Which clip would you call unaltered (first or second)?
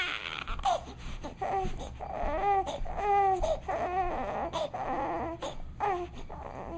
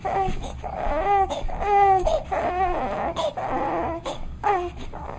first